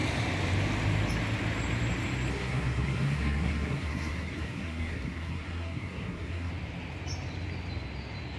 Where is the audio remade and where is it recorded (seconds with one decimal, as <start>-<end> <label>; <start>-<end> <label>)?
0.0-2.3 recorded; 2.3-6.5 remade; 6.5-8.4 recorded